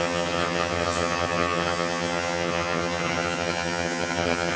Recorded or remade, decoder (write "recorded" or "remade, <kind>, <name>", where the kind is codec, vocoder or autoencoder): remade, vocoder, HiFi-GAN